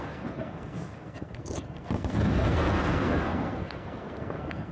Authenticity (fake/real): fake